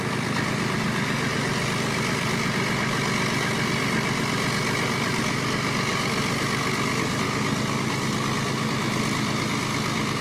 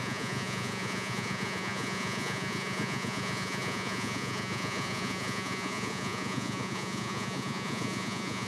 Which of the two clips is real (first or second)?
first